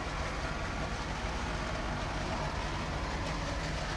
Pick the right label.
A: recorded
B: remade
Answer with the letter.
A